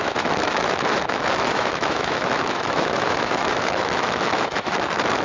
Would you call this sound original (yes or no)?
no